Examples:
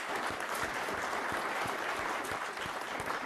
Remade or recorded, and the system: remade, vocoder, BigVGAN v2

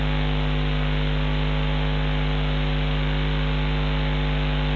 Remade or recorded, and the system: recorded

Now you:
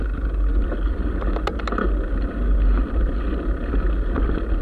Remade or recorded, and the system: recorded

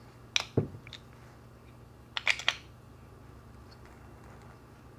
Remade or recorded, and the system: recorded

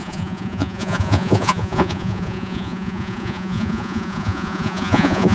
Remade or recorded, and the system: remade, vocoder, Vocos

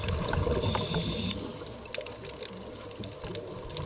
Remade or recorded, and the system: recorded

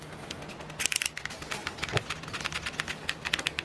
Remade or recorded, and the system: recorded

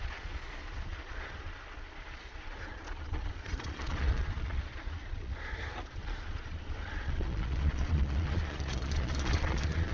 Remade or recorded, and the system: remade, vocoder, Vocos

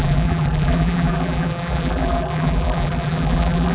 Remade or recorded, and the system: remade, vocoder, BigVGAN v2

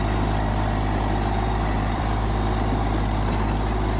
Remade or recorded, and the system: remade, vocoder, BigVGAN v2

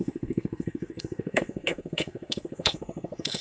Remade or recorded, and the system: remade, codec, SNAC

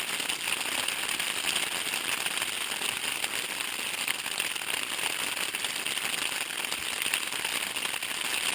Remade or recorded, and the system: recorded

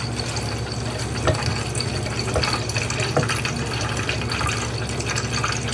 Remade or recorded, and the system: recorded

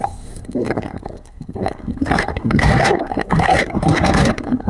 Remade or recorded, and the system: remade, codec, SNAC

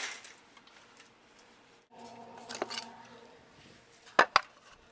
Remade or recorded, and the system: recorded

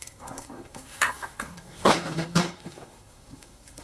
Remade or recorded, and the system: remade, codec, SNAC